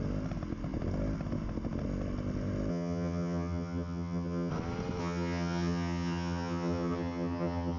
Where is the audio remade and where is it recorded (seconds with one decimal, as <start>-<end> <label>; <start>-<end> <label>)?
0.0-2.7 recorded; 2.7-4.5 remade; 4.5-5.0 recorded; 5.0-7.8 remade